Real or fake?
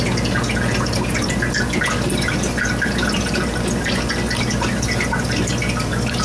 real